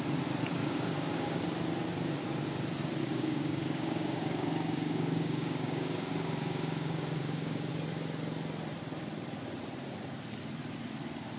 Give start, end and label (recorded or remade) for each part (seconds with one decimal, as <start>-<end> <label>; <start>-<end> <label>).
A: 0.0-0.6 recorded; 0.6-1.4 remade; 1.4-3.0 recorded; 3.0-7.7 remade; 7.7-11.4 recorded